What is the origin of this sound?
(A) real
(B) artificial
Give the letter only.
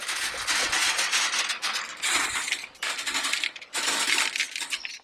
A